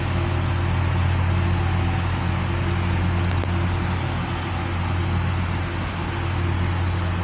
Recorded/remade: recorded